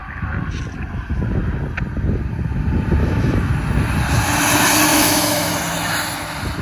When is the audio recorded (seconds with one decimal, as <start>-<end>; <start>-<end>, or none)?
0.0-3.0; 3.5-4.9; 5.5-6.6